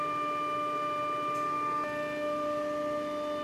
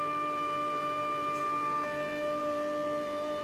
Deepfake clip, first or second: second